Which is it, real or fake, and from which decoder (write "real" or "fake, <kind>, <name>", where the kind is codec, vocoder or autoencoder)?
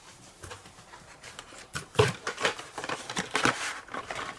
fake, vocoder, BigVGAN v2